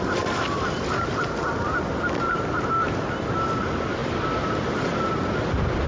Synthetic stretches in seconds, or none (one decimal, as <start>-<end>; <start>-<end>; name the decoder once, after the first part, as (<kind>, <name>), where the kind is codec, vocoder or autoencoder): none